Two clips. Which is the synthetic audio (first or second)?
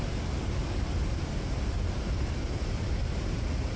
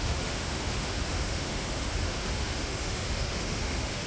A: second